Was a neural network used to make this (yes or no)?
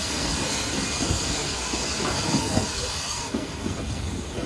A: yes